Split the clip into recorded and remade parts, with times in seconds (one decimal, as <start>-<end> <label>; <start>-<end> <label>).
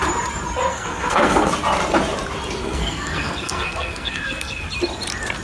0.0-0.7 recorded; 0.7-1.5 remade; 1.5-2.6 recorded; 2.6-4.6 remade; 4.6-5.4 recorded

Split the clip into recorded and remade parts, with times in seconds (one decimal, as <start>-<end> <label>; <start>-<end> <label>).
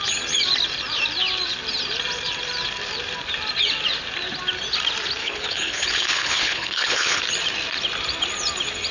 0.0-5.2 recorded; 5.2-7.2 remade; 7.2-8.9 recorded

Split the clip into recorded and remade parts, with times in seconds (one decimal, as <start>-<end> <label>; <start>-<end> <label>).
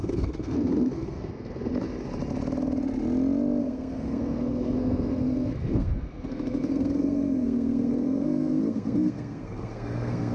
0.0-1.7 remade; 1.7-3.6 recorded; 3.6-10.3 remade